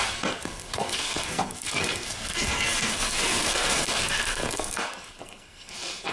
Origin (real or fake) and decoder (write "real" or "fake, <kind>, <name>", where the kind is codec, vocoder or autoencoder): fake, codec, SNAC